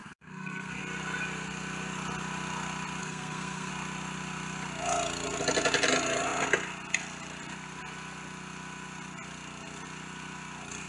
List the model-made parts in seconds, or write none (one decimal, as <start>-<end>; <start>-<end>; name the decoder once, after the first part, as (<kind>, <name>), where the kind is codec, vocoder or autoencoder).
0.0-0.8 (codec, SNAC); 3.0-3.7